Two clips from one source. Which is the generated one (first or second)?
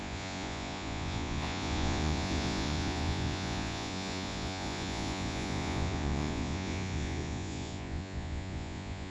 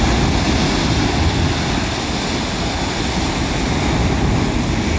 first